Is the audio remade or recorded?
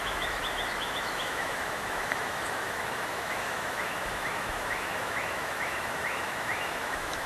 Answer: remade